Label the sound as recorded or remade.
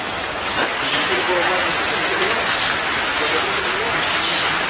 recorded